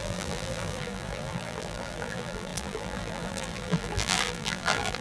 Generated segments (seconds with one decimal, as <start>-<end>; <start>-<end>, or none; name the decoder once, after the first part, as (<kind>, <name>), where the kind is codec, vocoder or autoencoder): 0.0-5.0 (vocoder, BigVGAN v2)